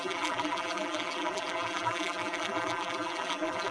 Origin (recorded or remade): remade